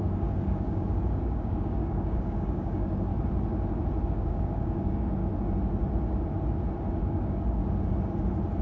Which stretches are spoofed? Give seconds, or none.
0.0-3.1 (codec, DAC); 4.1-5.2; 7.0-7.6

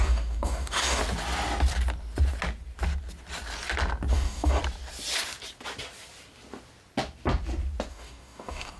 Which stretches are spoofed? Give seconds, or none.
0.0-1.0 (codec, DAC); 4.1-4.6; 7.9-8.8

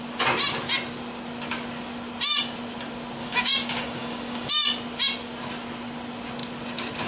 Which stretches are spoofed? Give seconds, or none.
3.2-4.5 (codec, DAC)

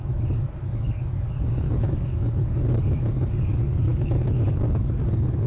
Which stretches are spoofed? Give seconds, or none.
0.0-5.5 (codec, DAC)

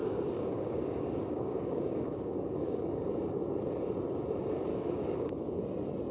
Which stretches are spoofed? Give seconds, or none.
0.0-3.2 (codec, DAC); 4.7-5.6